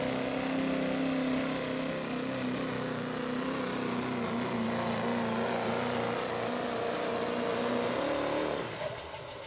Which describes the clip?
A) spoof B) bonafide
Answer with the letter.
B